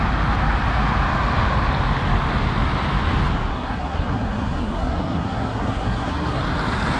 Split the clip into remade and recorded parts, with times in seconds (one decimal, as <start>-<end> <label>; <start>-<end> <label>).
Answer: 0.0-3.5 recorded; 3.5-6.4 remade; 6.4-7.0 recorded